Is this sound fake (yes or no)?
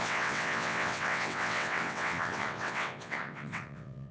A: yes